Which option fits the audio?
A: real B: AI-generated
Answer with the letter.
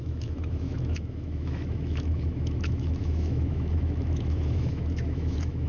B